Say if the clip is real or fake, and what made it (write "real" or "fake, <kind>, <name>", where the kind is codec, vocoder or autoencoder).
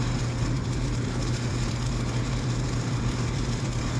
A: fake, vocoder, BigVGAN v2